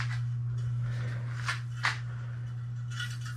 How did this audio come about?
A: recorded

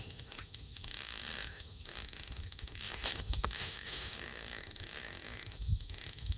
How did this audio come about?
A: remade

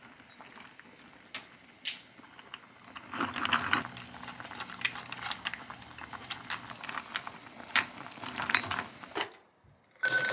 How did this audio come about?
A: recorded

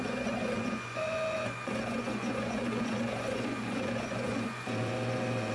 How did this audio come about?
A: remade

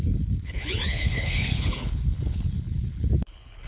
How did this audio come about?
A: remade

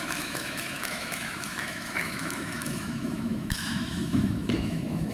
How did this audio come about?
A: remade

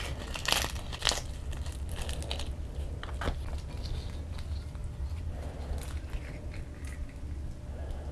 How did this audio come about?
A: recorded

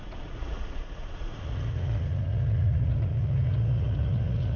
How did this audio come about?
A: remade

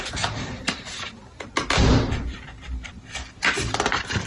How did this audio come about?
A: recorded